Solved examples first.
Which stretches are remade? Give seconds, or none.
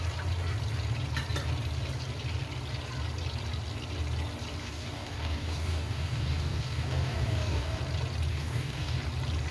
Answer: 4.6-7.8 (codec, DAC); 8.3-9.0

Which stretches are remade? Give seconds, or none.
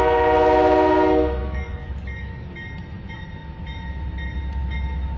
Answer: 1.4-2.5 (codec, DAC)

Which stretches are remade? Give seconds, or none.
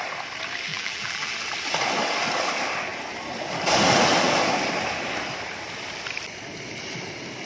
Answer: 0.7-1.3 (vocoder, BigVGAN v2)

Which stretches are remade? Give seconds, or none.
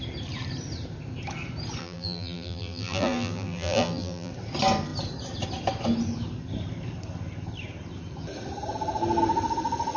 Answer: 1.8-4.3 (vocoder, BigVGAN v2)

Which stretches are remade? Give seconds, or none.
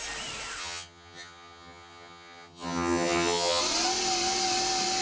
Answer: 0.6-3.6 (vocoder, HiFi-GAN)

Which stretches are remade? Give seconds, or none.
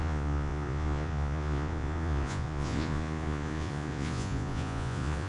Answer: 0.0-5.3 (vocoder, Vocos)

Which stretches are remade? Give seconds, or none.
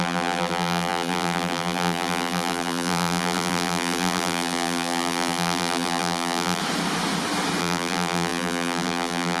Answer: 0.0-6.6 (vocoder, BigVGAN v2); 7.6-9.4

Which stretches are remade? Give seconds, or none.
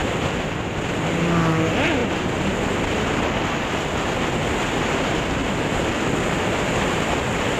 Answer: 0.0-1.0 (vocoder, BigVGAN v2)